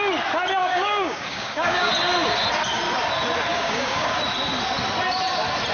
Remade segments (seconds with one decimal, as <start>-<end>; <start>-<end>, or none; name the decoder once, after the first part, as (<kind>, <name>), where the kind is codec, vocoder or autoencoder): 0.6-1.9 (codec, DAC); 3.5-4.1